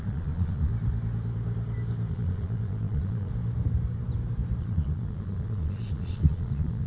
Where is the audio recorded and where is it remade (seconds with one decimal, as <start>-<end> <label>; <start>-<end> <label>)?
0.0-0.7 remade; 0.7-2.1 recorded; 2.1-3.3 remade; 3.3-4.6 recorded; 4.6-6.9 remade